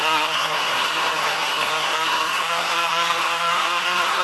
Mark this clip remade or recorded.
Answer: remade